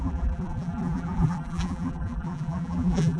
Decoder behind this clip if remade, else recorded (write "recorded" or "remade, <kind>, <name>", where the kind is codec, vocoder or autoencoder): remade, vocoder, BigVGAN v2